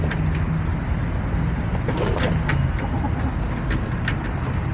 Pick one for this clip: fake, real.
real